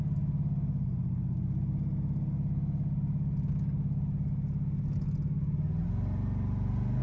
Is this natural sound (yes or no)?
yes